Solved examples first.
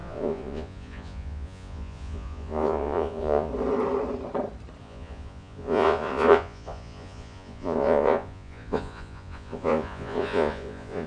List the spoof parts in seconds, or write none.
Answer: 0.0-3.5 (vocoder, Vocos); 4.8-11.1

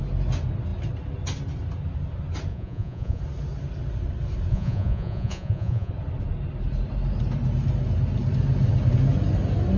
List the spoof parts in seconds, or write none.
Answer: 2.5-3.2 (vocoder, Vocos); 4.5-5.9

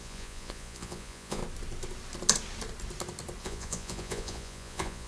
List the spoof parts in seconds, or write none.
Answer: 0.0-1.4 (vocoder, Vocos); 3.4-5.1

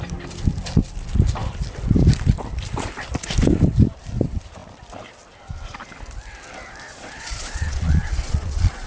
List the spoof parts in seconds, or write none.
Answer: 6.9-8.9 (vocoder, Vocos)